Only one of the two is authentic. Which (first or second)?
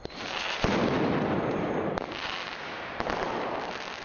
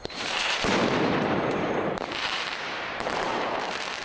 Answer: first